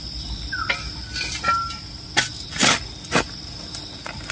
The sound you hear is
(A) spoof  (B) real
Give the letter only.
B